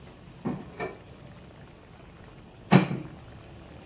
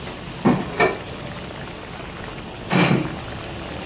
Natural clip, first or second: second